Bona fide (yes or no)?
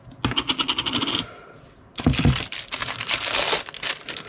yes